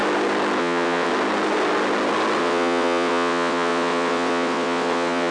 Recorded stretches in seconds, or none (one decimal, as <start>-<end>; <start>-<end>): 0.0-0.6; 1.1-2.4

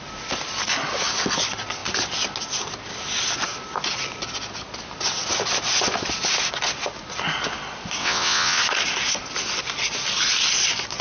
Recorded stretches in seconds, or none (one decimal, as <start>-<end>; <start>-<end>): 0.0-8.0; 8.6-11.0

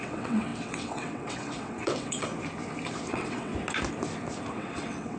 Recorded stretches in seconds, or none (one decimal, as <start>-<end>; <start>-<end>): 2.3-3.1; 3.5-4.5